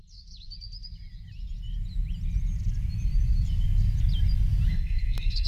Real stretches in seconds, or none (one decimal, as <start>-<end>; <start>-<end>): 0.0-4.7